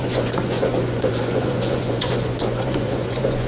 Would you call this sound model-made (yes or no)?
yes